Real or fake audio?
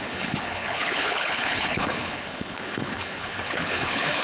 fake